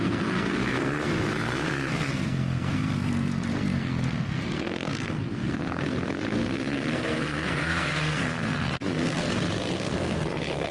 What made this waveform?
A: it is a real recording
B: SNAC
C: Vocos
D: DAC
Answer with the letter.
B